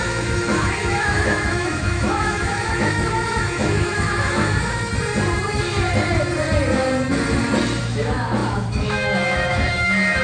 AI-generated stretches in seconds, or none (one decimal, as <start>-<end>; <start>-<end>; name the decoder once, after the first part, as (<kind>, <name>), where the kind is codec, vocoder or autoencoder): 0.0-4.9 (autoencoder, DAC-VAE); 7.8-10.2